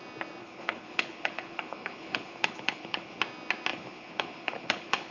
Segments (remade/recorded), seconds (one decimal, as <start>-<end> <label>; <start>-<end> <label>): 0.0-0.4 recorded; 0.4-3.2 remade; 3.2-3.7 recorded; 3.7-5.1 remade

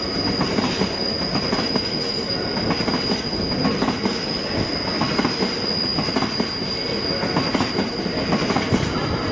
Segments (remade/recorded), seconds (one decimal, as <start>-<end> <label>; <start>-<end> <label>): 0.0-9.3 recorded

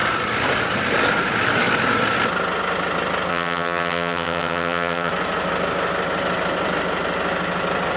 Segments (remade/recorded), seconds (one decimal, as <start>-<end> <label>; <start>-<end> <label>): 0.0-3.3 recorded; 3.3-5.1 remade; 5.1-8.0 recorded